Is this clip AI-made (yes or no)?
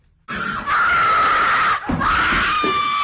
no